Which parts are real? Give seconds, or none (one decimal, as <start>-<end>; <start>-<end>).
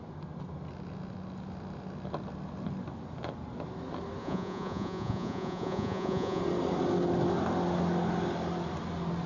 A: 0.0-4.2; 6.4-9.3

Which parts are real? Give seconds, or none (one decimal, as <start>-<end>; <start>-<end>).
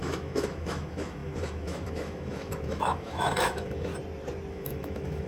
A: 3.9-4.5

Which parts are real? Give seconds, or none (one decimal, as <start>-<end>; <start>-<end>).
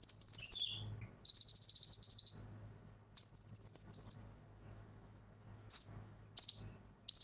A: 0.0-4.5; 6.2-7.2